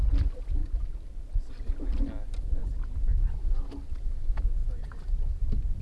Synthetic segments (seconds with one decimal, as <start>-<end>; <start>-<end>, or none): none